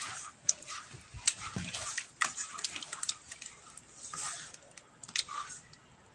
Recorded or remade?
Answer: recorded